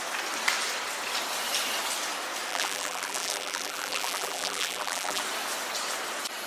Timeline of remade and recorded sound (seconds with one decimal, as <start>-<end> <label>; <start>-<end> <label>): 0.0-2.5 recorded; 2.5-5.2 remade; 5.2-6.5 recorded